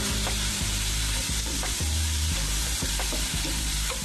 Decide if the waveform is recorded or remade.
remade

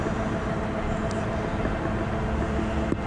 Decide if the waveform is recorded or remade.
recorded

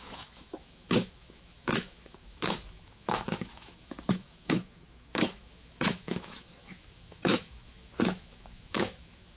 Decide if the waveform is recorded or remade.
remade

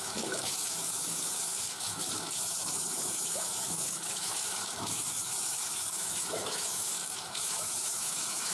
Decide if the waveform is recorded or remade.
remade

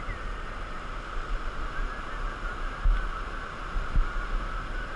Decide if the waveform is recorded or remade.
recorded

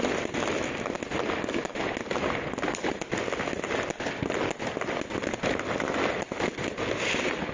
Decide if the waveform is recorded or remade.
recorded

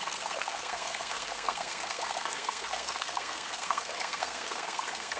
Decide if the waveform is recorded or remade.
remade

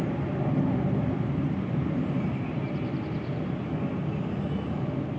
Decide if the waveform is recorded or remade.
recorded